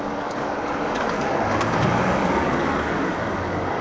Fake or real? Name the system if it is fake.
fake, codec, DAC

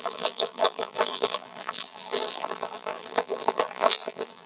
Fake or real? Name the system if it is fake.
fake, vocoder, BigVGAN v2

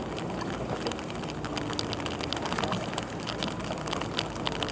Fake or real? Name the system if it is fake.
real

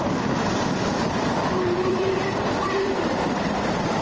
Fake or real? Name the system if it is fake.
fake, vocoder, BigVGAN v2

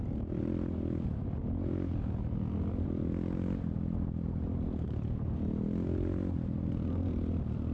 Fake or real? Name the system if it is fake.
real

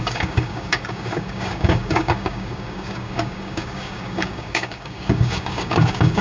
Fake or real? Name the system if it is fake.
fake, codec, DAC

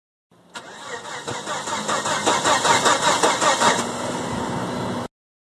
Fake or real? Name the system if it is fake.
real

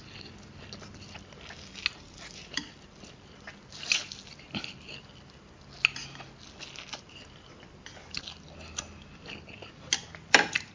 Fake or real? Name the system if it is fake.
real